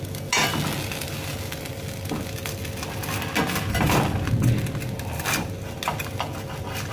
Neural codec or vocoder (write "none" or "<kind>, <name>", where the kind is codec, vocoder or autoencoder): none